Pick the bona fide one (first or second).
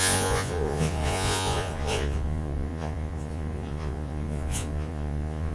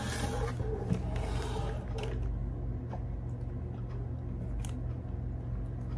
second